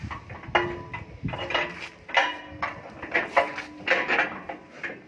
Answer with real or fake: real